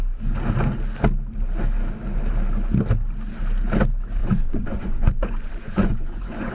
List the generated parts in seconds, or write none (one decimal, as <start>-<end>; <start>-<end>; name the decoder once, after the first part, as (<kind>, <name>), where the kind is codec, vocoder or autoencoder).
4.2-6.5 (vocoder, Vocos)